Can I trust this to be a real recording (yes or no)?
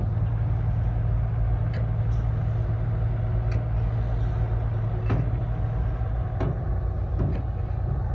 yes